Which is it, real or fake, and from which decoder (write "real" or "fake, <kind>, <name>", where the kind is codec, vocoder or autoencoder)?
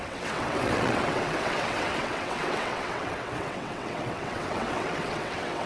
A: fake, vocoder, WaveNeXt